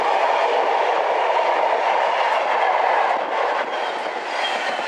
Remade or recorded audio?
recorded